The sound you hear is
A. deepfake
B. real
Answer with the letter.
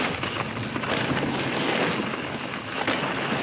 B